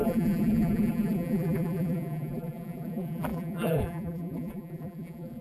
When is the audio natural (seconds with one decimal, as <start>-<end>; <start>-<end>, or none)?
none